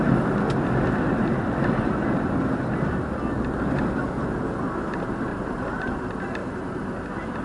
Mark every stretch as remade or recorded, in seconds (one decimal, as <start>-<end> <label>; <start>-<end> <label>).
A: 0.0-5.3 recorded; 5.3-5.9 remade; 5.9-6.4 recorded; 6.4-6.9 remade; 6.9-7.4 recorded